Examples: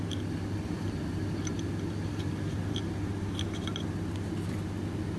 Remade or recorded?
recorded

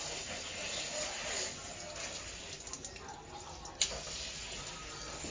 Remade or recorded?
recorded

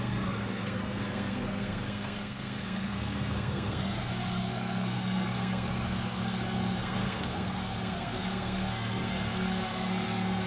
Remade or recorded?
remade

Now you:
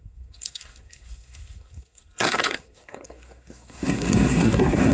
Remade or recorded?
remade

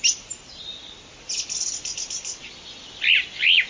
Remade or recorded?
recorded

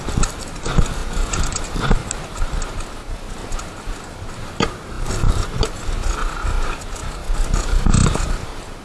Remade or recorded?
recorded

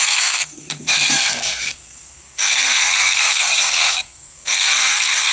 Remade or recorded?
remade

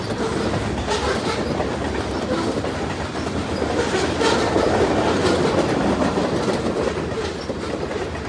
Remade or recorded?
recorded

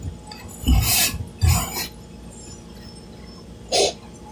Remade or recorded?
recorded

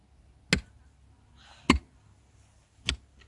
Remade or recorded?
recorded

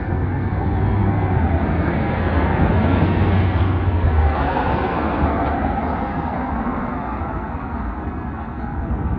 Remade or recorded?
remade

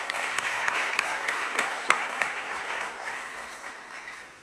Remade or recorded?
remade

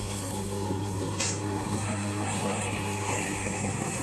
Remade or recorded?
remade